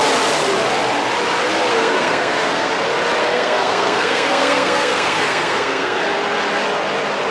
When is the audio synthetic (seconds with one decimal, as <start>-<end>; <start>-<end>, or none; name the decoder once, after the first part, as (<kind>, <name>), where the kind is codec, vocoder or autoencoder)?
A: 1.7-2.7 (codec, SNAC); 3.2-6.0